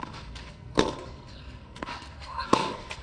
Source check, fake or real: fake